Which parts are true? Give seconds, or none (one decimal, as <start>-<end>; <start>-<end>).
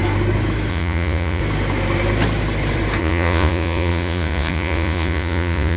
0.0-0.7; 1.4-3.0